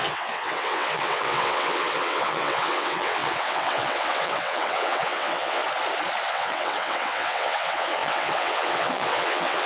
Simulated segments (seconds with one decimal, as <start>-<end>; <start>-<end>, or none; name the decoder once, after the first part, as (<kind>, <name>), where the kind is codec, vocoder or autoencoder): 0.0-5.6 (vocoder, WaveNeXt); 6.3-9.7